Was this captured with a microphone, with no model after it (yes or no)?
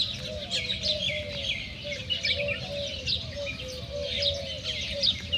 yes